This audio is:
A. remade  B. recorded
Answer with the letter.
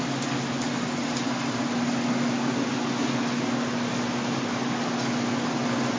B